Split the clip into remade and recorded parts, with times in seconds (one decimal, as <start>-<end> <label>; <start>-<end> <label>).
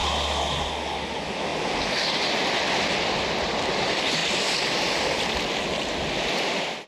0.0-4.2 recorded; 4.2-5.6 remade; 5.6-6.9 recorded